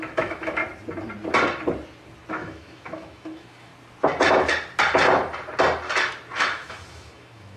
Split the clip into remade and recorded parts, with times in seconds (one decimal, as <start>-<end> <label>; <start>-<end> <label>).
0.0-0.6 remade; 0.6-2.3 recorded; 2.3-3.7 remade; 3.7-6.4 recorded; 6.4-7.6 remade